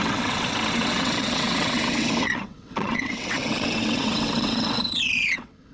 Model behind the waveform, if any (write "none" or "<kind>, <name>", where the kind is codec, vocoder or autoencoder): vocoder, WaveNeXt